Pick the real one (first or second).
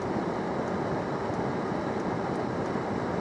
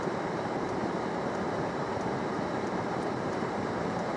first